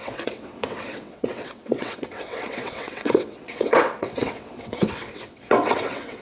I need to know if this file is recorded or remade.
remade